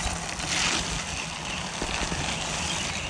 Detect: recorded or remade recorded